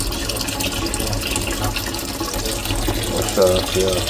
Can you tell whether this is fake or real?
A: real